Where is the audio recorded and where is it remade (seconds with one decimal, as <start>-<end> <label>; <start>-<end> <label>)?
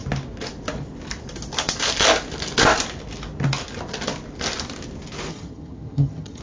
0.0-5.3 recorded; 5.3-6.4 remade